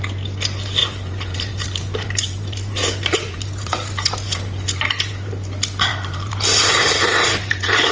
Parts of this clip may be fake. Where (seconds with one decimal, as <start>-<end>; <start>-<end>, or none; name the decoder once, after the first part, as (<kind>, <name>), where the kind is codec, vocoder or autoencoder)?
0.8-5.3 (vocoder, BigVGAN v2); 5.9-7.9